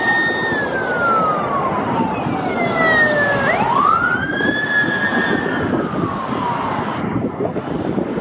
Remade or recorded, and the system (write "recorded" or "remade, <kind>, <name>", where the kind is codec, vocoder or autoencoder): recorded